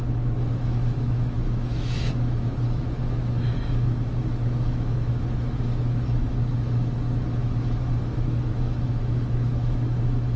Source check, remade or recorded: remade